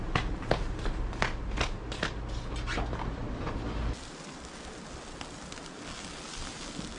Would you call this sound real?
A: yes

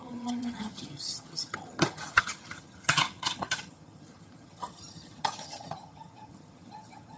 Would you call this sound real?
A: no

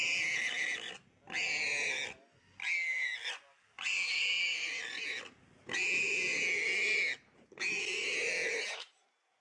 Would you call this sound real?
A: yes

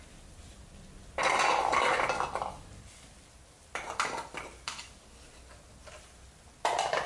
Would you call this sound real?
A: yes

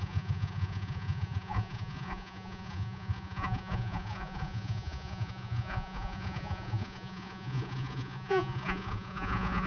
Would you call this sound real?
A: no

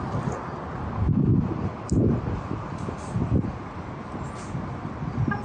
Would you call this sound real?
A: yes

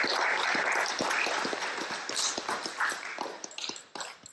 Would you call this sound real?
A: yes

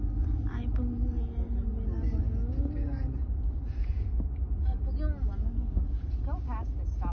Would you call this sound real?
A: yes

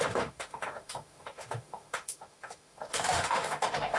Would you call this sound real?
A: no